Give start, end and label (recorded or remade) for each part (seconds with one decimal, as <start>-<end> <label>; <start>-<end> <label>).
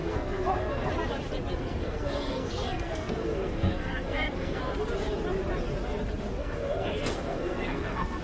0.0-0.9 remade; 0.9-1.6 recorded; 1.6-4.6 remade; 4.6-6.4 recorded; 6.4-8.2 remade